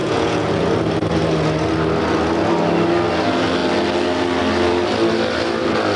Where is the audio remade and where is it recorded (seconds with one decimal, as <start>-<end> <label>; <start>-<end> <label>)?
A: 0.0-0.6 remade; 0.6-6.0 recorded